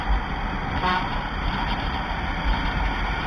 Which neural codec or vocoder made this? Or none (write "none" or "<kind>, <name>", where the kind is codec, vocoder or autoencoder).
vocoder, BigVGAN v2